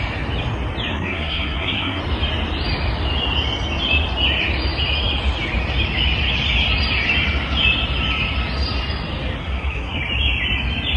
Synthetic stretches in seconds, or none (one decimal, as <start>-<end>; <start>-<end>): 0.9-2.0; 9.4-10.0